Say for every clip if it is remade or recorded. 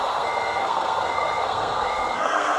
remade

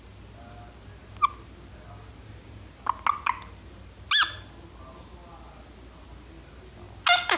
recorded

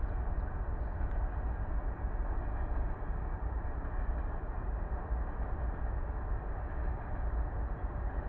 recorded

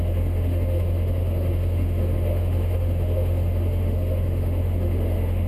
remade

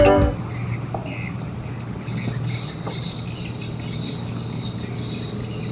recorded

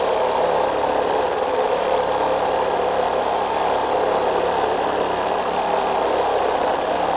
recorded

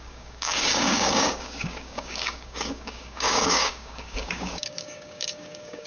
remade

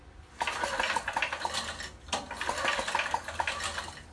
recorded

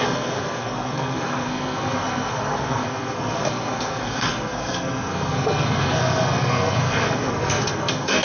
remade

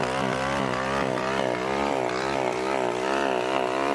remade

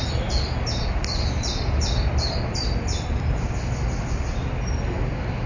recorded